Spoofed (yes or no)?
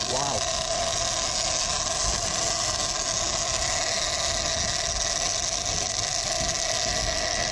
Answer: no